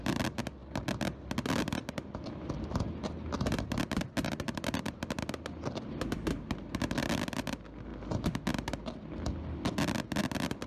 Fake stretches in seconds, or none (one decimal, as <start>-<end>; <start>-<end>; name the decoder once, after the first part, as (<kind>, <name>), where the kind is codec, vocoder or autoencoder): none